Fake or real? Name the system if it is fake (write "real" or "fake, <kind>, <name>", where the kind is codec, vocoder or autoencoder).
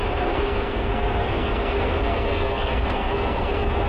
fake, codec, SNAC